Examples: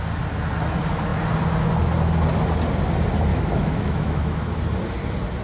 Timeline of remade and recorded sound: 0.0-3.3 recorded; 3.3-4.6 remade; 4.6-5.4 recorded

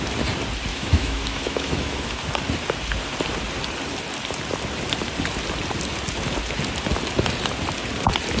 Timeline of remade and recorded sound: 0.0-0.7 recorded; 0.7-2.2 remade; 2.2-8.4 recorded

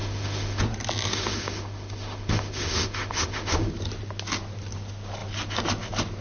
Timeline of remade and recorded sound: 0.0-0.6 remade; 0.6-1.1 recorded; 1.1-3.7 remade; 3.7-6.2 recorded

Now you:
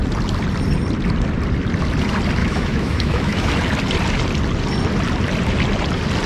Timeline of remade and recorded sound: 0.0-2.4 recorded; 2.4-3.5 remade; 3.5-6.3 recorded

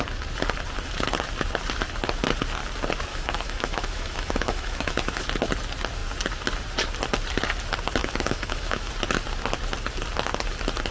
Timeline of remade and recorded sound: 0.0-3.1 recorded; 3.1-5.2 remade; 5.2-8.0 recorded; 8.0-8.9 remade; 8.9-10.9 recorded